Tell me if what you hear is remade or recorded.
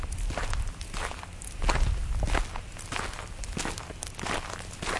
recorded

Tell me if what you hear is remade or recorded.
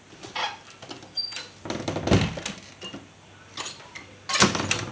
recorded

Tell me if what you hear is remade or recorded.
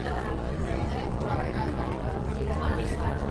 remade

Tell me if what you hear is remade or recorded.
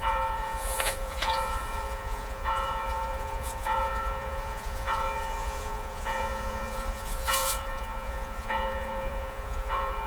remade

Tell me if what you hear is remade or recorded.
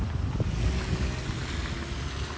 recorded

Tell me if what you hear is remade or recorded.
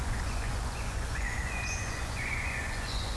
remade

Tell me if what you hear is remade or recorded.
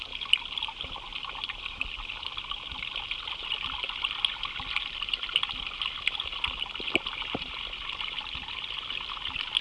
recorded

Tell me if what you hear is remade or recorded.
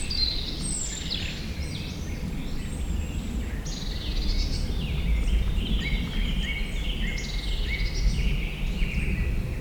recorded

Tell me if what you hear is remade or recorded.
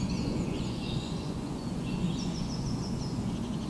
remade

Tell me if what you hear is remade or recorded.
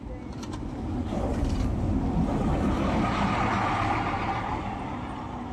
recorded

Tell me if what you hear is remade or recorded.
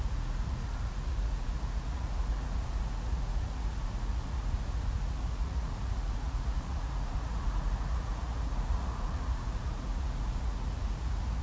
remade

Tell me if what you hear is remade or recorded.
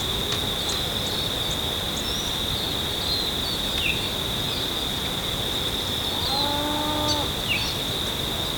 recorded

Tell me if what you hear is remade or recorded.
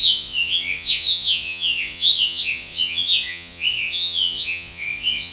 remade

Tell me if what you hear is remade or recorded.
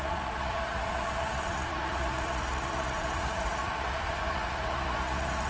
remade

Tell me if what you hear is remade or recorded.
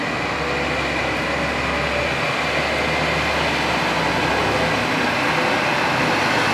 recorded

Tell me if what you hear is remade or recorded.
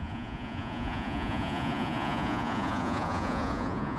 remade